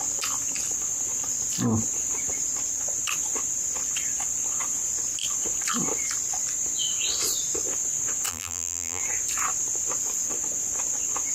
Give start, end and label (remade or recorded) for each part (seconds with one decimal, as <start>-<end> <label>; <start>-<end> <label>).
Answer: 0.0-8.3 recorded; 8.3-9.0 remade; 9.0-11.3 recorded